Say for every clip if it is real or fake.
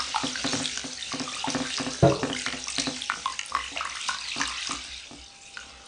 real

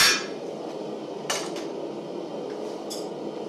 real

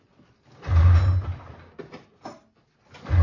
real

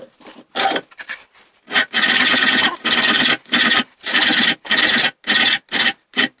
real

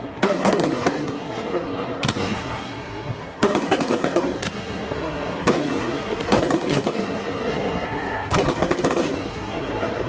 fake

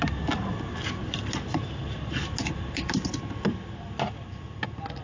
real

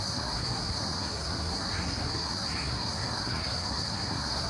fake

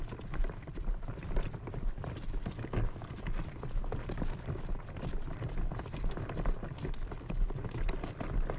real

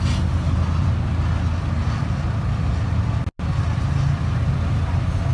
real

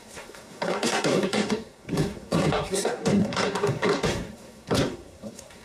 fake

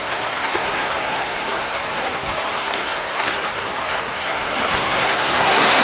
fake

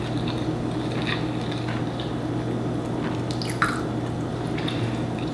real